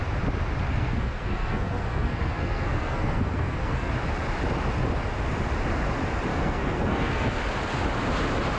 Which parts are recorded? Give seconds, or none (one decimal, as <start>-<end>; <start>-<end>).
0.0-0.7; 3.9-6.3; 7.4-8.6

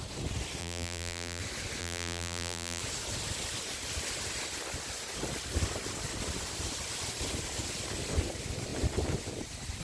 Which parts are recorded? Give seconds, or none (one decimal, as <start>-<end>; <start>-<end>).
0.0-0.6; 1.4-1.8; 2.8-9.8

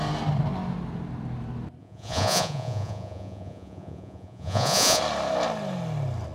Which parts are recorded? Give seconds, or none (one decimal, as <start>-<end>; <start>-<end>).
0.0-1.8; 5.0-6.3

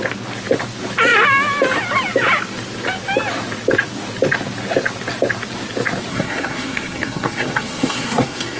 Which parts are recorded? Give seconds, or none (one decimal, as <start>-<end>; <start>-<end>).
0.0-6.1

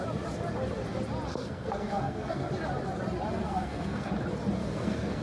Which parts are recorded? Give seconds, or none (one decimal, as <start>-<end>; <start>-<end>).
0.0-1.3; 2.5-3.4; 4.1-4.6